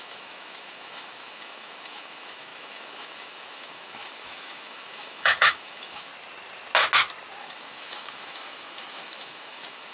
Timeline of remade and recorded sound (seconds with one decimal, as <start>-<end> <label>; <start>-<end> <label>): 0.0-6.1 remade; 6.1-7.4 recorded; 7.4-9.9 remade